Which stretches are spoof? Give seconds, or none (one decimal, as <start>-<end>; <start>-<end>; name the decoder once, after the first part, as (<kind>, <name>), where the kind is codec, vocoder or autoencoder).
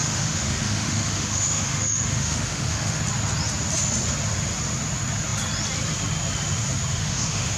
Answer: 0.0-3.0 (autoencoder, DAC-VAE); 6.9-7.6